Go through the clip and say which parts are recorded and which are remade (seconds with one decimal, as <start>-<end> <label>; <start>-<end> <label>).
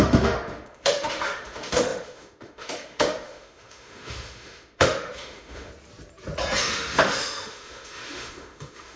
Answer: 0.0-5.7 remade; 5.7-6.6 recorded; 6.6-9.0 remade